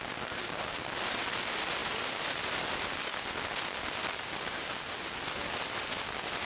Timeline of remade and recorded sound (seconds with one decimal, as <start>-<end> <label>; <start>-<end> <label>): 0.0-6.4 recorded